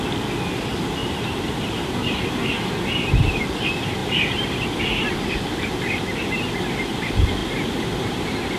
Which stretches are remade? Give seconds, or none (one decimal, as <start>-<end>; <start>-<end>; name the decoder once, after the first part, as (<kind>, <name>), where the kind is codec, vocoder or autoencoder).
1.0-2.8 (vocoder, BigVGAN v2); 4.0-4.8